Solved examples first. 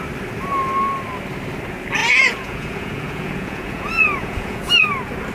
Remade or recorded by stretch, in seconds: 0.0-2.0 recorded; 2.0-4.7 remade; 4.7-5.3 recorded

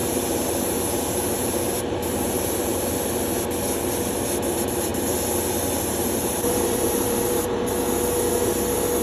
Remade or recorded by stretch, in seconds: 0.0-2.9 remade; 2.9-4.9 recorded; 4.9-7.6 remade; 7.6-9.0 recorded

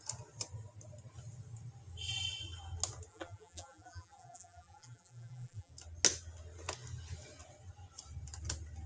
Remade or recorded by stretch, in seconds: 0.0-3.1 recorded; 3.1-5.7 remade; 5.7-8.9 recorded

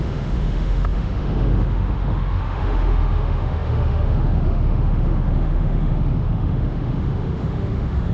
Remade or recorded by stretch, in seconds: 0.0-8.1 remade

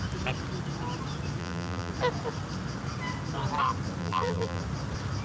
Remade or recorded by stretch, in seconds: 0.0-1.4 recorded; 1.4-1.9 remade; 1.9-4.0 recorded; 4.0-4.6 remade; 4.6-5.2 recorded

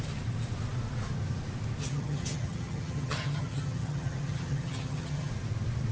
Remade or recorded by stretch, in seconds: 0.0-1.8 recorded; 1.8-5.3 remade; 5.3-5.9 recorded

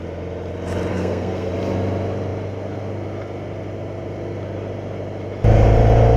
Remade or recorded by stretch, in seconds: 0.0-0.9 recorded; 0.9-1.5 remade; 1.5-6.2 recorded